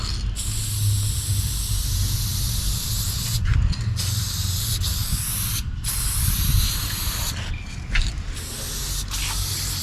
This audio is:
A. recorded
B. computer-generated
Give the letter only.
A